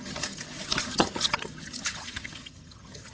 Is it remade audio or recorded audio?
remade